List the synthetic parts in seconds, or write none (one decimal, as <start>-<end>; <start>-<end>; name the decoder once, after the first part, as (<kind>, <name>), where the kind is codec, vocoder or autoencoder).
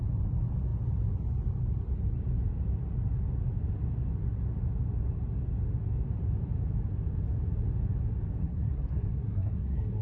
8.4-10.0 (codec, SNAC)